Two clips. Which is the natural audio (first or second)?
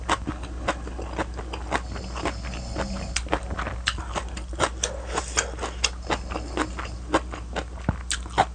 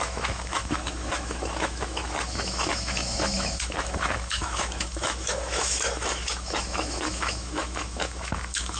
first